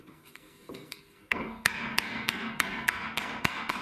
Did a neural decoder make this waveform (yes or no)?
yes